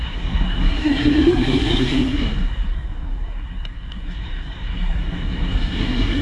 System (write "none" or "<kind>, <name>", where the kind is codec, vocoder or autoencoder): codec, SNAC